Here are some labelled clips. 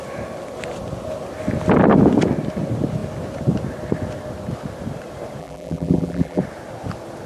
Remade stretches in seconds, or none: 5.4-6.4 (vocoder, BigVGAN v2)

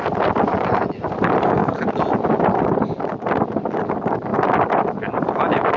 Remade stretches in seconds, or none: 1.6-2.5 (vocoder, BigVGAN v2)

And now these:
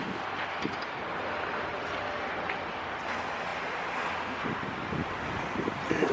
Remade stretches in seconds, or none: none